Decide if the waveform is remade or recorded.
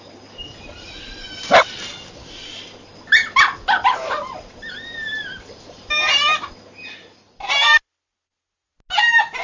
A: recorded